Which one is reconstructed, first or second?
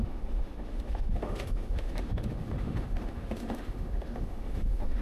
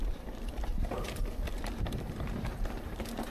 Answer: first